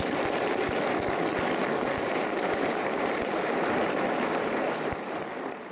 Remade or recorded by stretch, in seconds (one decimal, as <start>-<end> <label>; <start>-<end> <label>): 0.0-2.1 recorded; 2.1-5.7 remade